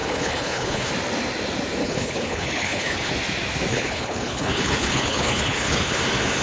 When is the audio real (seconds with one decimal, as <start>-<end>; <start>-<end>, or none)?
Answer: 0.9-1.8; 3.1-3.7; 6.0-6.4